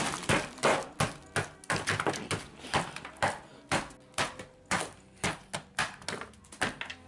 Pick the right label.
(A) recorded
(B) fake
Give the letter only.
A